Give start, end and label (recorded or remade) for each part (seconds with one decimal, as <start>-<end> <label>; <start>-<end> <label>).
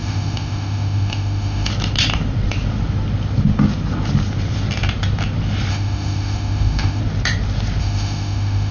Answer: 0.0-1.7 remade; 1.7-5.7 recorded; 5.7-7.0 remade; 7.0-7.8 recorded; 7.8-8.7 remade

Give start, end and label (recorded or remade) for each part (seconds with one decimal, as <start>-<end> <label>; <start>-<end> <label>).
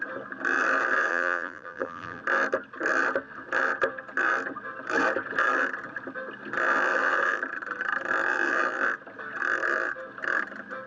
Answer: 0.0-1.1 recorded; 1.1-2.2 remade; 2.2-10.9 recorded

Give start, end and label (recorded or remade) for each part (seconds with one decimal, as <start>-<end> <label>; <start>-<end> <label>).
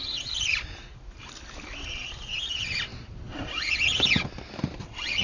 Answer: 0.0-5.2 recorded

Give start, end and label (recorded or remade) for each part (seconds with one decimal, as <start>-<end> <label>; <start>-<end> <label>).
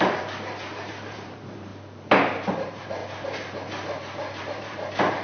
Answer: 0.0-1.7 remade; 1.7-2.5 recorded; 2.5-3.0 remade; 3.0-4.4 recorded; 4.4-5.2 remade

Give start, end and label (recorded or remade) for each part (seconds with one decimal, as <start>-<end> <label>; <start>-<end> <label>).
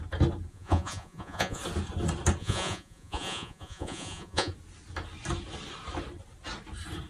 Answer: 0.0-0.5 recorded; 0.5-1.6 remade; 1.6-2.4 recorded; 2.4-4.5 remade; 4.5-7.1 recorded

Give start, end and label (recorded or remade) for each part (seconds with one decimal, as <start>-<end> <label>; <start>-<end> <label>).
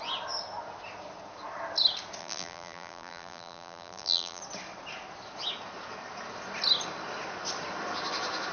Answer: 0.0-2.2 recorded; 2.2-4.4 remade; 4.4-8.5 recorded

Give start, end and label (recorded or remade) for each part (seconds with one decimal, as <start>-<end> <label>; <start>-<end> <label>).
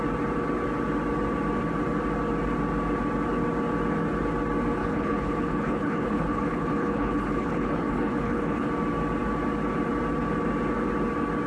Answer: 0.0-4.8 recorded; 4.8-8.7 remade; 8.7-11.5 recorded